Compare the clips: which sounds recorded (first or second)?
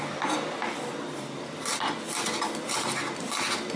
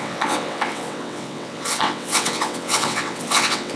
first